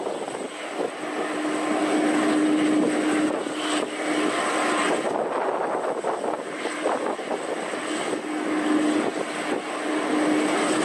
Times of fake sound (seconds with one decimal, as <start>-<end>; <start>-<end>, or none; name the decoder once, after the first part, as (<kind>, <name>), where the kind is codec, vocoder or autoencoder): none